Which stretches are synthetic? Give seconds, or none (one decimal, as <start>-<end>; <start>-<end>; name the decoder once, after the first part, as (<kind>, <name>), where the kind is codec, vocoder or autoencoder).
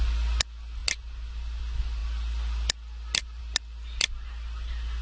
none